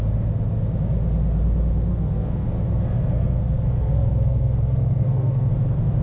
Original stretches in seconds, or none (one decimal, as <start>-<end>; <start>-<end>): 0.0-1.9; 5.5-6.0